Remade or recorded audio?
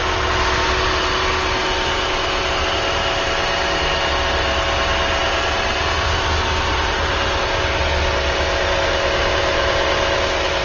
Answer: recorded